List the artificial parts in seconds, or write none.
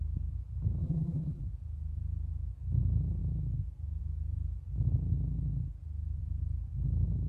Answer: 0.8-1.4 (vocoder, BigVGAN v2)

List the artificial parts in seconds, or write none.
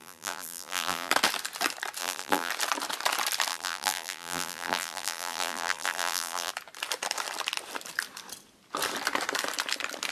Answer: 0.0-1.1 (vocoder, BigVGAN v2); 2.0-2.5; 3.5-6.5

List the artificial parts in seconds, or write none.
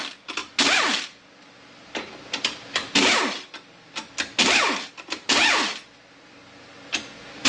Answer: 0.4-4.9 (vocoder, BigVGAN v2)